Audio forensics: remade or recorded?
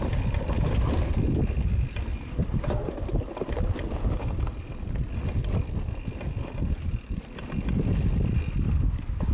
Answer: recorded